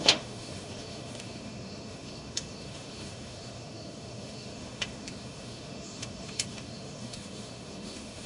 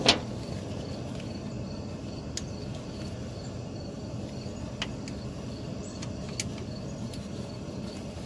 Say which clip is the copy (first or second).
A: first